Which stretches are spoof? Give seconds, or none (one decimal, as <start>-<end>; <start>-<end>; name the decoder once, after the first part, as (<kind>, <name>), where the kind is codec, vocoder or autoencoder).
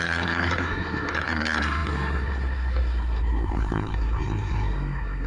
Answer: 0.0-5.3 (codec, SNAC)